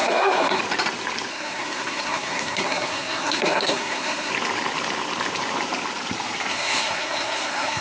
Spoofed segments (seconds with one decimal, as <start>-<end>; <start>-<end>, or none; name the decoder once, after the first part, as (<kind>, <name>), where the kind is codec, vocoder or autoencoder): 0.0-0.6 (codec, SNAC); 1.3-4.3; 6.5-7.8